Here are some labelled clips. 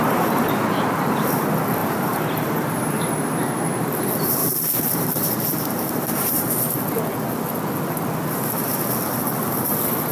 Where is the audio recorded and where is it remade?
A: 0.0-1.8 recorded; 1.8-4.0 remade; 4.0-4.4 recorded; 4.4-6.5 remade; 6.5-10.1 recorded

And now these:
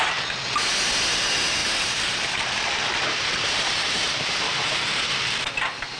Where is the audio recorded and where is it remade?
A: 0.0-1.6 recorded; 1.6-5.2 remade; 5.2-6.0 recorded

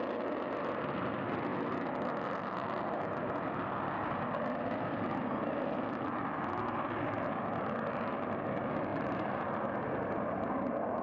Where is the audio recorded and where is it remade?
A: 0.0-8.9 recorded; 8.9-9.4 remade; 9.4-11.0 recorded

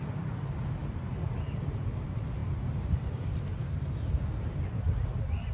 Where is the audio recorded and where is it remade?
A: 0.0-2.4 remade; 2.4-4.4 recorded; 4.4-5.5 remade

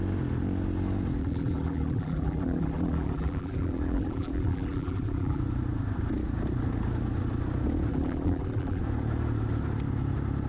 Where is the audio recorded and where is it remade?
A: 0.0-1.2 recorded; 1.2-5.4 remade; 5.4-7.9 recorded; 7.9-8.8 remade; 8.8-10.5 recorded